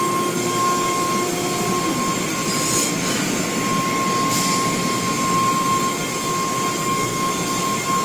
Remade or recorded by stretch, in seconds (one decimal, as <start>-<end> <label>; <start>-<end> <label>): 0.0-6.8 recorded; 6.8-7.3 remade; 7.3-8.0 recorded